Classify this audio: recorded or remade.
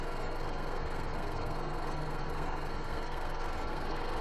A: remade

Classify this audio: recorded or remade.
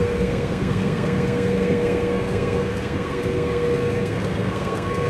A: remade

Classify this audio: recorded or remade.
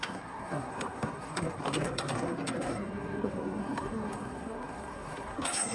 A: remade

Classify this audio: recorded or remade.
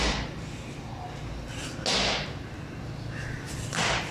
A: recorded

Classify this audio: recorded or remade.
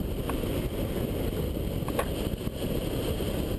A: recorded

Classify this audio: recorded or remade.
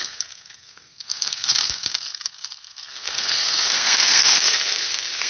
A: remade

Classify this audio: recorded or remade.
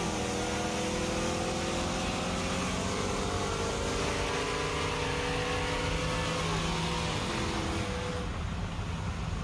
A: recorded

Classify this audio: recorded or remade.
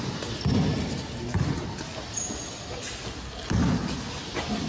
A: recorded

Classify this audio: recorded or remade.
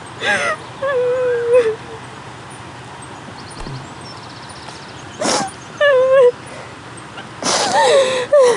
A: recorded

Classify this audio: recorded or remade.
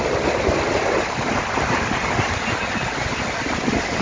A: recorded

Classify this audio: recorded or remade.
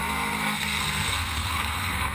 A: remade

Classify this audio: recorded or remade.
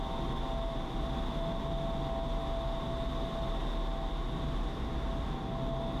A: recorded